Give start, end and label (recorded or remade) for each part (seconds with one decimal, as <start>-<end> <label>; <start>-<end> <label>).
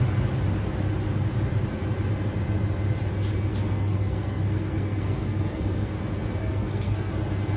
0.0-3.5 recorded; 3.5-6.0 remade; 6.0-6.4 recorded; 6.4-7.1 remade; 7.1-7.6 recorded